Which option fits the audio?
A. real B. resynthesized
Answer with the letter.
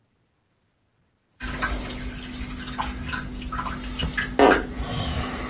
A